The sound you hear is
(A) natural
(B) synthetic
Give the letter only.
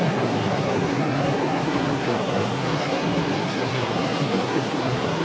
B